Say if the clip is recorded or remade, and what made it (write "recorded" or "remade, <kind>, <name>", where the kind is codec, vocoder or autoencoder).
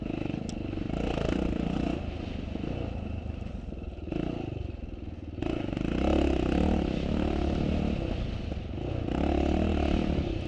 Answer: recorded